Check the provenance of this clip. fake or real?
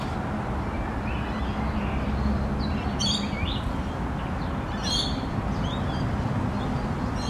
real